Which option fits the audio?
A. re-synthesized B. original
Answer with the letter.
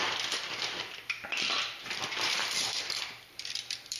A